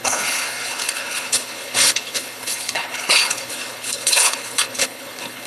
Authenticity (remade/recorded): remade